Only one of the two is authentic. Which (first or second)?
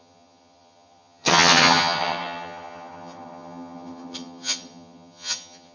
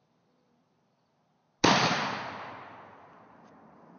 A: second